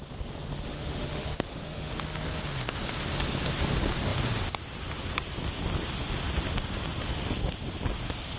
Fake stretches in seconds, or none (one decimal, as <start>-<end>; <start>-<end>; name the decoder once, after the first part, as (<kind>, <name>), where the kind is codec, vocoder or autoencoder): 0.7-1.9 (autoencoder, DAC-VAE)